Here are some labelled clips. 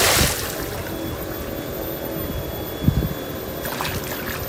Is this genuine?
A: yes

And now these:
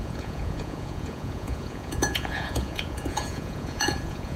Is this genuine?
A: no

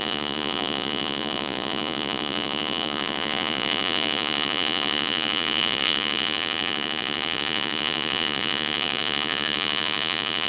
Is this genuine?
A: no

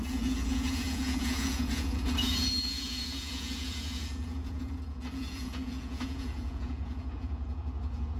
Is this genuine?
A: no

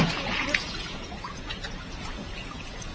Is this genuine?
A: no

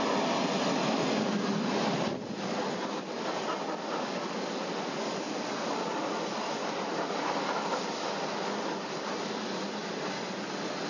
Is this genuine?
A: yes